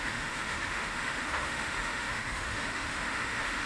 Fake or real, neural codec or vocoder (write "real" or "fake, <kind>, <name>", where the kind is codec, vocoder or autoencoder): fake, autoencoder, DAC-VAE